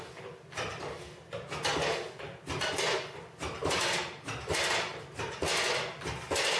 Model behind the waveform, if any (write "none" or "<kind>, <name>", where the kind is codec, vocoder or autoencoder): none